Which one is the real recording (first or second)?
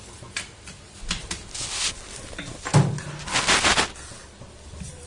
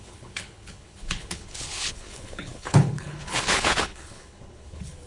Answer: first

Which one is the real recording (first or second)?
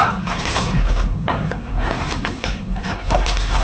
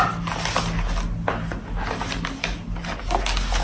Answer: second